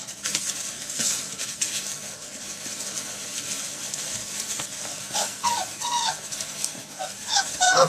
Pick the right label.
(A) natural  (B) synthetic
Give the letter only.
B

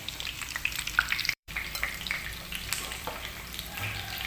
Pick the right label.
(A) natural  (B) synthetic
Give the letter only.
B